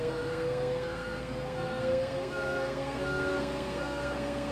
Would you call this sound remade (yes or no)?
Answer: yes